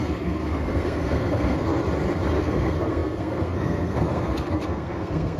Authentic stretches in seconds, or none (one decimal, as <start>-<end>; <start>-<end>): 1.8-2.4